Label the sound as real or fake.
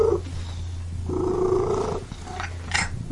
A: real